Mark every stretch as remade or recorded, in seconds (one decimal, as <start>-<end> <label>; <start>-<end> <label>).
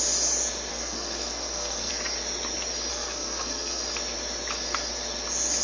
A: 0.0-0.7 recorded; 0.7-1.9 remade; 1.9-2.9 recorded; 2.9-3.8 remade; 3.8-5.6 recorded